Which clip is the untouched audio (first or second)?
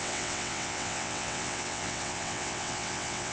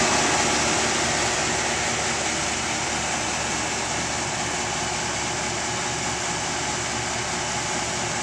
second